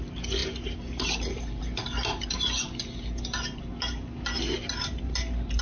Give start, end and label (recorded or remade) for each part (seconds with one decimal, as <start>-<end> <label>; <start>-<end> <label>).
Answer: 0.0-5.6 recorded